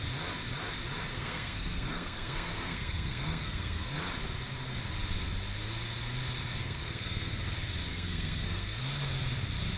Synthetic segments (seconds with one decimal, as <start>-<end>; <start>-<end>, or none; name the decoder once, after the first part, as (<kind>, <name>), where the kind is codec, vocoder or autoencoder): 1.1-4.0 (codec, SNAC); 6.6-7.4; 7.9-8.8